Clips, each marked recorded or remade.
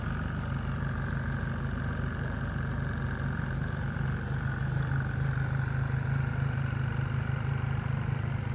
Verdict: recorded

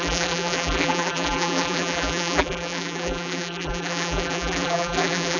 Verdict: remade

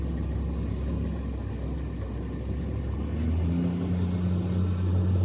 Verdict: recorded